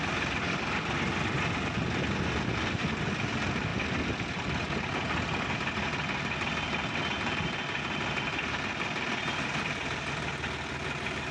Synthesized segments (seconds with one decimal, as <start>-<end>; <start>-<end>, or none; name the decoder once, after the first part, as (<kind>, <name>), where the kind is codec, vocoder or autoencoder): none